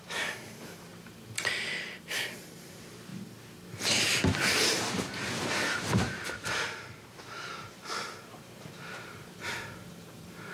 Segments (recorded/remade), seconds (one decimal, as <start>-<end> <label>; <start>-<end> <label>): 0.0-0.9 remade; 0.9-1.7 recorded; 1.7-3.1 remade; 3.1-5.7 recorded; 5.7-10.5 remade